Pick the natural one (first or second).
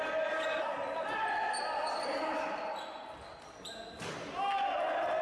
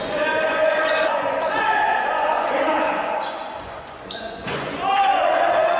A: first